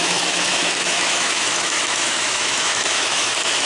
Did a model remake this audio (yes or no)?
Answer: yes